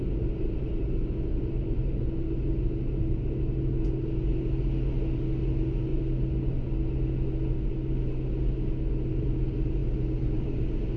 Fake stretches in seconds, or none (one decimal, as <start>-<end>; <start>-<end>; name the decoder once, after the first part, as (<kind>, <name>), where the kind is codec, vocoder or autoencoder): none